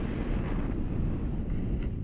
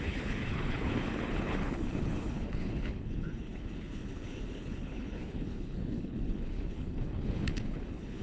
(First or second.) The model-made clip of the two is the second